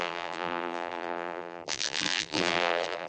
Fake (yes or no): yes